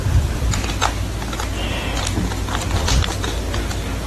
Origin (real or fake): real